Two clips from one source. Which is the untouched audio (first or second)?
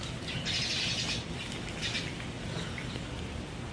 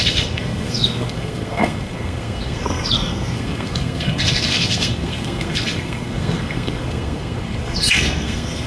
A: first